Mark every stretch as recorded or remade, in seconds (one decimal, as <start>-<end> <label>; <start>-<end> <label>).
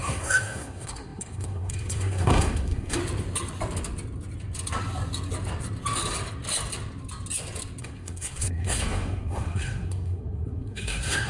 0.0-3.0 remade; 3.0-7.8 recorded; 7.8-11.3 remade